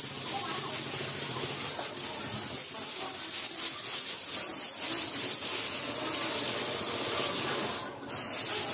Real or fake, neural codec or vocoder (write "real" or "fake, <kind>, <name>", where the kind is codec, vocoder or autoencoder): real